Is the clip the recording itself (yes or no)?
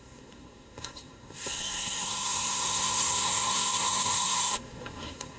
no